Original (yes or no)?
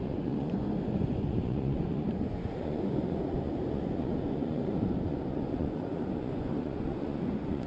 no